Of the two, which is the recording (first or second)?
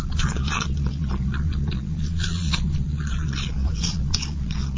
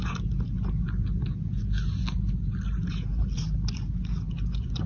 second